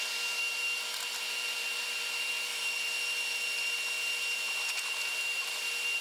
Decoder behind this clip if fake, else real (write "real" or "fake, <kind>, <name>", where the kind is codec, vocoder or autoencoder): fake, vocoder, BigVGAN v2